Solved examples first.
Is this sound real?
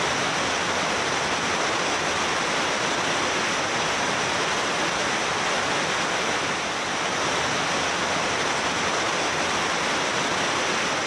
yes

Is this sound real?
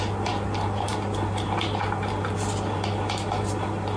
yes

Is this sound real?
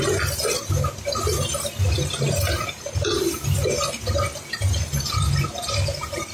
yes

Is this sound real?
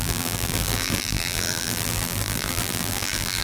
no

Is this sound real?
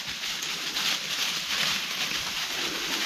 yes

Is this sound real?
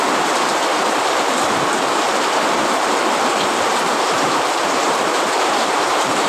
no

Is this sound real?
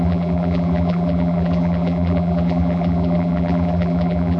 no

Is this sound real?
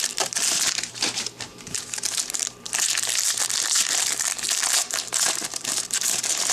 no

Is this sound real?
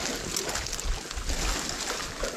yes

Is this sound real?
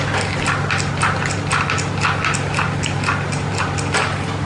yes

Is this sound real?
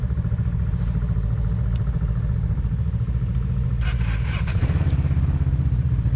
yes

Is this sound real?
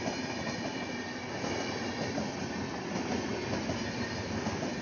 yes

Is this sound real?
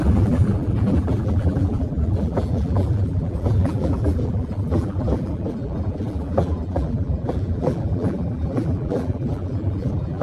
no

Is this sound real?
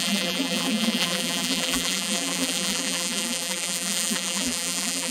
no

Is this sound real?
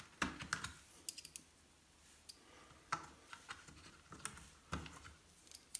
yes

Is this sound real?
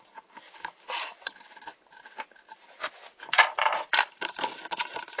no